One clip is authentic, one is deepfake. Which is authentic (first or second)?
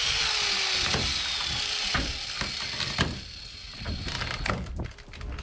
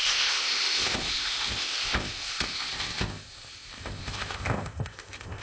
first